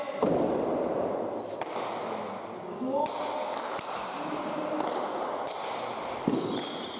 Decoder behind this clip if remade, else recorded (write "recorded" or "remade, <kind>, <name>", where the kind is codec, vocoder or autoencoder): recorded